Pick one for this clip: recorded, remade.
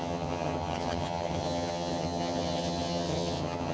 remade